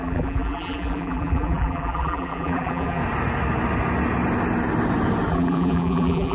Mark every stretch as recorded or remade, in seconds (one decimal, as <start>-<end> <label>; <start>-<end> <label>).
0.0-3.0 remade; 3.0-5.3 recorded; 5.3-6.3 remade